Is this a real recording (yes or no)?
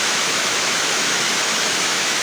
no